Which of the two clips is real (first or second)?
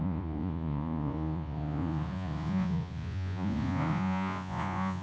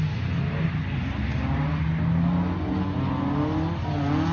second